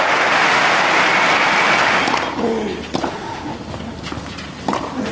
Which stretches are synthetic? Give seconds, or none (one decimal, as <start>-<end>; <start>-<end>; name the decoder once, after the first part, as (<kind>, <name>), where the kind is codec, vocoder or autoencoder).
0.0-0.8 (autoencoder, DAC-VAE); 3.1-3.5